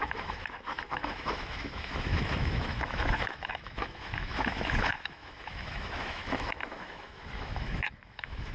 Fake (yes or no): yes